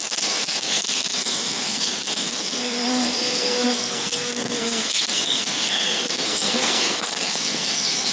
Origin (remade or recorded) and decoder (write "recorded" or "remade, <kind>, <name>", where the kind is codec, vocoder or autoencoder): remade, codec, SNAC